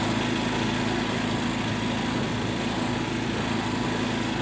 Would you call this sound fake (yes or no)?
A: no